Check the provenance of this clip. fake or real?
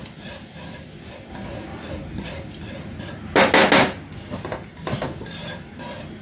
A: real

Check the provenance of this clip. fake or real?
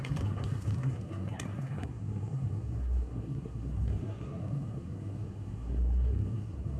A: fake